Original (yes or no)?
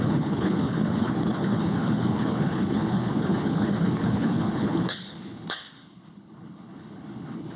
no